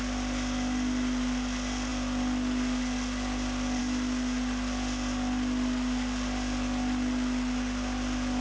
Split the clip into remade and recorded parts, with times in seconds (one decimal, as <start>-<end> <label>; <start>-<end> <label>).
0.0-8.4 recorded